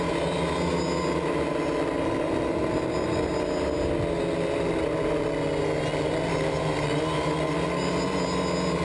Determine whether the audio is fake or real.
real